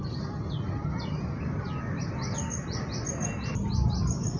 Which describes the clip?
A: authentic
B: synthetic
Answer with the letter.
A